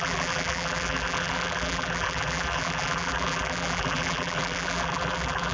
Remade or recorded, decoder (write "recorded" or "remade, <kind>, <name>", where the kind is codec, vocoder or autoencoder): remade, vocoder, BigVGAN v2